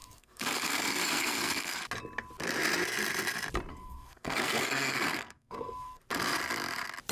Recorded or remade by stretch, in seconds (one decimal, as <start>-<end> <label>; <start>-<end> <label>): 0.0-1.8 remade; 1.8-3.7 recorded; 3.7-6.0 remade; 6.0-7.1 recorded